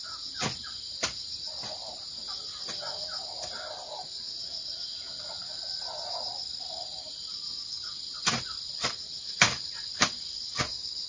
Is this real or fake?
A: real